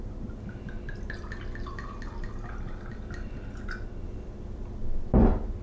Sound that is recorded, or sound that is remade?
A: recorded